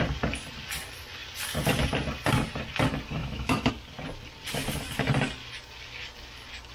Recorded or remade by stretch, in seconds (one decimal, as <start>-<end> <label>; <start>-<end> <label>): 0.0-3.2 recorded; 3.2-3.7 remade; 3.7-6.7 recorded